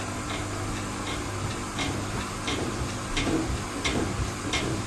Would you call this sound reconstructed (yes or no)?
no